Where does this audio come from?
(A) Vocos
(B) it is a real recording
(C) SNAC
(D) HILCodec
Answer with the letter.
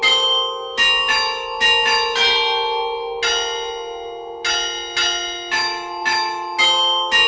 B